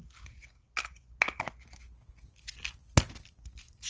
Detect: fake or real real